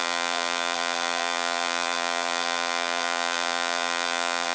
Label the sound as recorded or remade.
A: remade